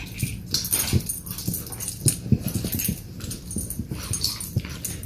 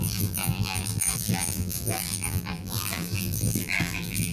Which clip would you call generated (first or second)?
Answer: second